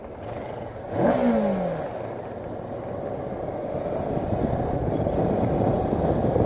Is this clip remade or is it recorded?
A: recorded